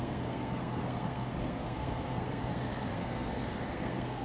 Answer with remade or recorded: remade